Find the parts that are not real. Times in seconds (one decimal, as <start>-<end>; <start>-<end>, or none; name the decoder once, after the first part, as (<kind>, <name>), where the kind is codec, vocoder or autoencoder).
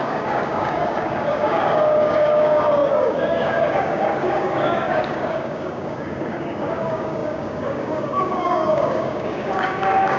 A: 0.0-10.2 (codec, DAC)